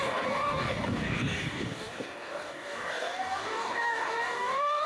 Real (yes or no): no